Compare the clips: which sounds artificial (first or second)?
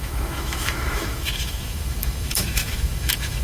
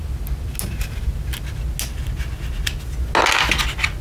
first